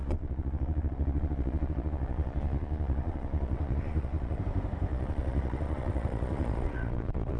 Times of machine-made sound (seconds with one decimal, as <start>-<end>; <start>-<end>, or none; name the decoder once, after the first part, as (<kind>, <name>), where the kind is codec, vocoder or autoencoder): 0.0-4.4 (vocoder, Vocos); 4.9-7.4